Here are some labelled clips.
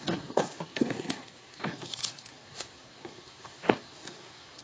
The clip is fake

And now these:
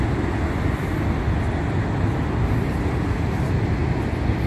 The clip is real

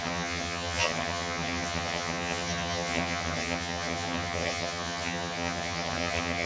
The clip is fake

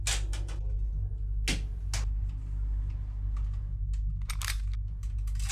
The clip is real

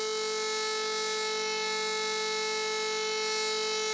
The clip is real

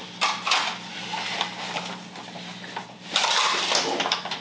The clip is real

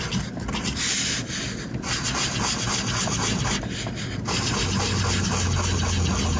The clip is real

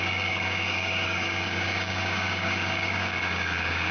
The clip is fake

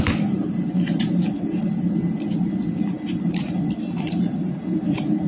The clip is fake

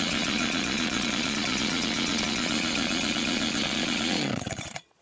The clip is fake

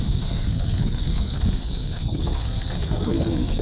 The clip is fake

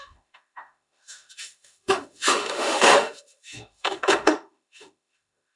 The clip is fake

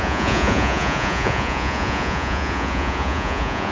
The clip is fake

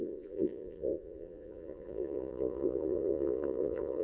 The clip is fake